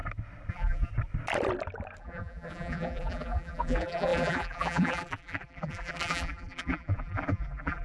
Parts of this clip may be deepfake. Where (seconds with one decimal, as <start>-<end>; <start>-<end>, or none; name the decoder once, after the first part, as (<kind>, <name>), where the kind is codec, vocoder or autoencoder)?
0.5-0.9 (vocoder, BigVGAN v2); 2.0-7.8